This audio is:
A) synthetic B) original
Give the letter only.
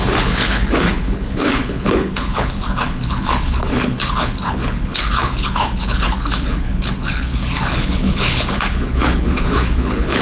A